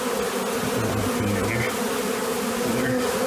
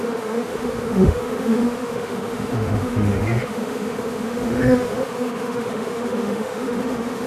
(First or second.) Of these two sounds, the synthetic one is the second